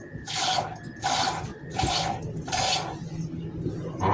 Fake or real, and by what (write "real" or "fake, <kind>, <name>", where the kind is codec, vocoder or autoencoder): real